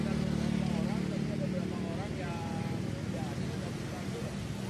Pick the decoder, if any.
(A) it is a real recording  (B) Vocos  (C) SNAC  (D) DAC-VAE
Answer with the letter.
A